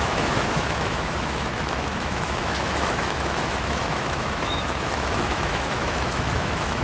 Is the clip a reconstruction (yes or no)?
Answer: yes